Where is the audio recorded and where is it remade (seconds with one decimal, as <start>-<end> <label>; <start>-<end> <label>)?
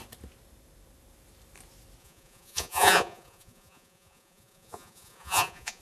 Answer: 0.0-2.0 recorded; 2.0-5.8 remade